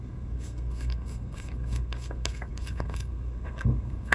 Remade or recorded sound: remade